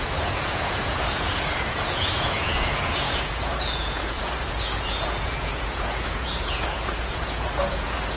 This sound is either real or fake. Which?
fake